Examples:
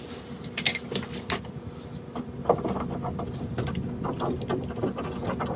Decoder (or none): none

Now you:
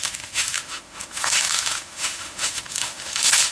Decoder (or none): autoencoder, DAC-VAE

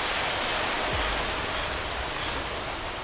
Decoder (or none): none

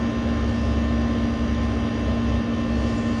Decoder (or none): none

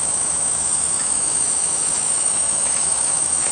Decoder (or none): autoencoder, DAC-VAE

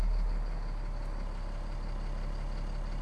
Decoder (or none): none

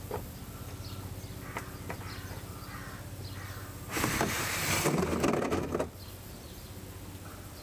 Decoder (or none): none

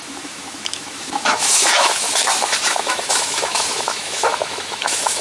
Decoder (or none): autoencoder, DAC-VAE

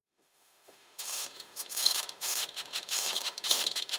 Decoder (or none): autoencoder, DAC-VAE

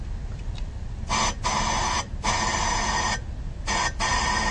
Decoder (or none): none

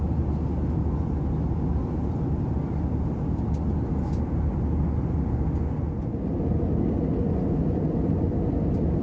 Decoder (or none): none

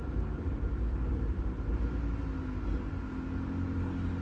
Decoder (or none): none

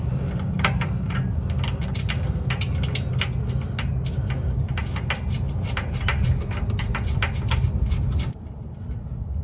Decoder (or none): none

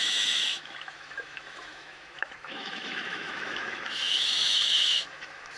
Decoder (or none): autoencoder, DAC-VAE